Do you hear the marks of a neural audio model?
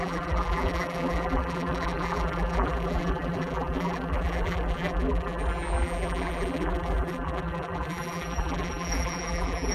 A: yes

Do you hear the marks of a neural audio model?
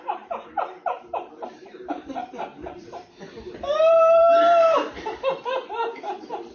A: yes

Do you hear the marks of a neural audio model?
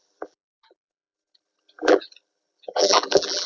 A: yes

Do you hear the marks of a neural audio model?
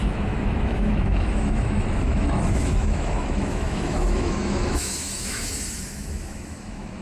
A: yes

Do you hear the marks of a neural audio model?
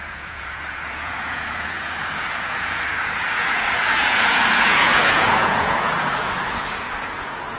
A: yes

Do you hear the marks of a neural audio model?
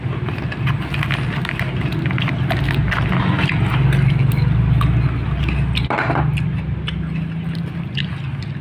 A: no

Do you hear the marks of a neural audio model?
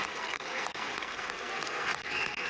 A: yes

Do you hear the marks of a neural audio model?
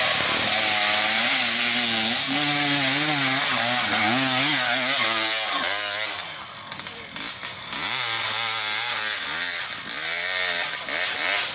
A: no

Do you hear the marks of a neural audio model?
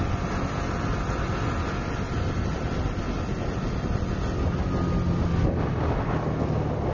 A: no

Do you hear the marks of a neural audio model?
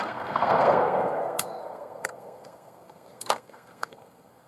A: yes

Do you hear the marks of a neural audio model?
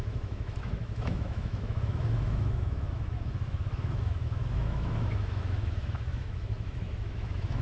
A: yes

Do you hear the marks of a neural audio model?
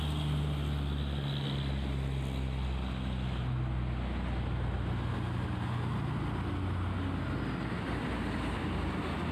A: no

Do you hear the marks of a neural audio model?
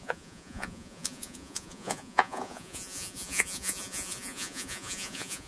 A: yes